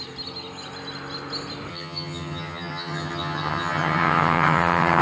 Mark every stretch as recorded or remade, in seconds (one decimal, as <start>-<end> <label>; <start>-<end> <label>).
0.0-1.7 recorded; 1.7-5.0 remade